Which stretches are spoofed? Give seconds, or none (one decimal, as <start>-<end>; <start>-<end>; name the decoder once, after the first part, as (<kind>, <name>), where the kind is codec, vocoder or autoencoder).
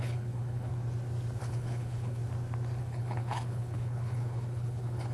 0.0-0.7 (codec, HILCodec); 1.4-2.2; 2.8-5.1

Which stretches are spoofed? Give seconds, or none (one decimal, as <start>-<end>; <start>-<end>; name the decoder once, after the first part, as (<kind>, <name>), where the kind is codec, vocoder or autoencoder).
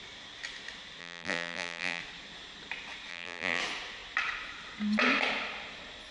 1.0-2.0 (vocoder, BigVGAN v2); 3.1-3.6